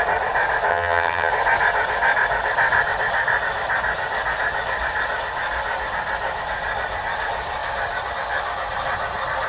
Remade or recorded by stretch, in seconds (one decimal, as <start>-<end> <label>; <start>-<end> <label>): 0.0-0.7 recorded; 0.7-1.3 remade; 1.3-9.5 recorded